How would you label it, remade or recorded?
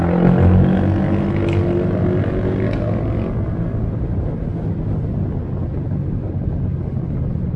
recorded